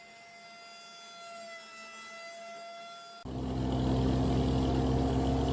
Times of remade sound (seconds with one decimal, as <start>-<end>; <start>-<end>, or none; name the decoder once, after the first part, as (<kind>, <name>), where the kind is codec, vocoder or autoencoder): none